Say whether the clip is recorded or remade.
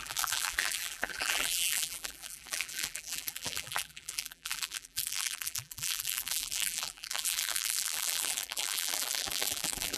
remade